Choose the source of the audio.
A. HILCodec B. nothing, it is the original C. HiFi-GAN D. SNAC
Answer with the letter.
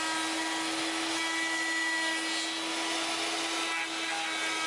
B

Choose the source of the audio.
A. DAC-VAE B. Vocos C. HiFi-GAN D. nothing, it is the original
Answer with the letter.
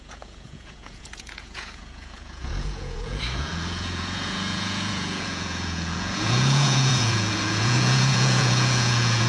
B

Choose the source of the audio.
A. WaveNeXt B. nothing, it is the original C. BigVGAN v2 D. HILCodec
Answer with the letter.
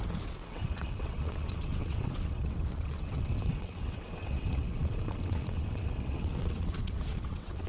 A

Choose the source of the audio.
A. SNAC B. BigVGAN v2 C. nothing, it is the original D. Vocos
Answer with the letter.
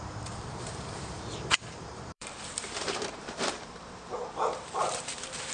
B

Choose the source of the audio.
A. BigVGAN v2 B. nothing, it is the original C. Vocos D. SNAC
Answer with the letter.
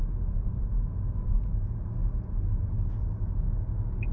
B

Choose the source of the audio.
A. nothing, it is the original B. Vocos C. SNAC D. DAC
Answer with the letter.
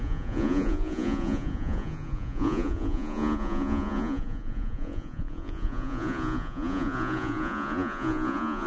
B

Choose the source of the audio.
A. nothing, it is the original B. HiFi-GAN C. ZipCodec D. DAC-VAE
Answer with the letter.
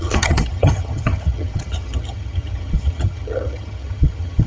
B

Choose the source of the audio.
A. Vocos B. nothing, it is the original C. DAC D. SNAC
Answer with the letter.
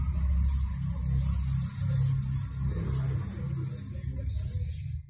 B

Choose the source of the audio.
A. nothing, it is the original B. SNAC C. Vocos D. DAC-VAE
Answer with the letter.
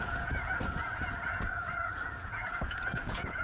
C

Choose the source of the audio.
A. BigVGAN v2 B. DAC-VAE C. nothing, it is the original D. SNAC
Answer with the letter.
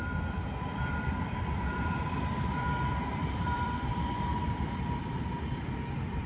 A